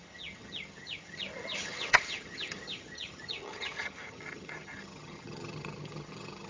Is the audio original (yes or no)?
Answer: no